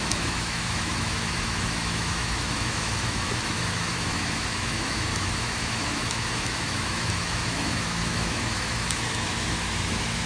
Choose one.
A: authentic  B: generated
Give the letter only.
B